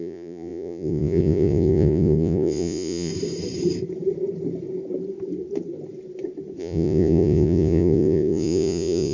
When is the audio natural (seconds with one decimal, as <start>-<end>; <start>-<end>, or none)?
3.1-6.6